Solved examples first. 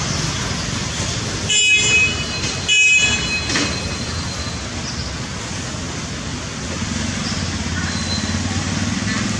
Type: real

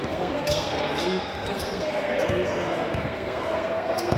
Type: fake